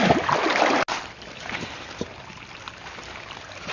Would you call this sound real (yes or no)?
yes